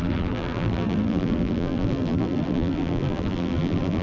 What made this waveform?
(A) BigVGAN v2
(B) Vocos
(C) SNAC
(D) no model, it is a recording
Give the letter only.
A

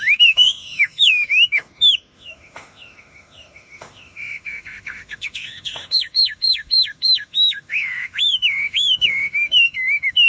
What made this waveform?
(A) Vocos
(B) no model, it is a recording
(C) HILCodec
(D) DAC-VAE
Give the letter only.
D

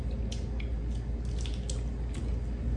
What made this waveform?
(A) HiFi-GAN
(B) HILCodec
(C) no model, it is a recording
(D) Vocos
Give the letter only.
C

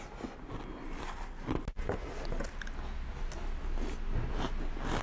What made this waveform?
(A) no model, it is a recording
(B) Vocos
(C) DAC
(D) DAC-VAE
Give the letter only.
A